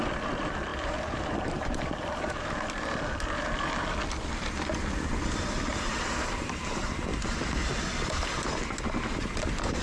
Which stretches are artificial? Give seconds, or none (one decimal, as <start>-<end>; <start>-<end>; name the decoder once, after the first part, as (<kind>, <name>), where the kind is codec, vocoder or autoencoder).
0.7-2.7 (vocoder, BigVGAN v2); 5.7-6.8